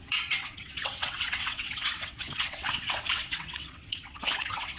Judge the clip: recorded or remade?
remade